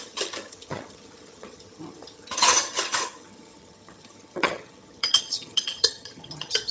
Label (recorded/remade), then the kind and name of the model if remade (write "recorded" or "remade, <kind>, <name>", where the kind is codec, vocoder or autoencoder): remade, vocoder, HiFi-GAN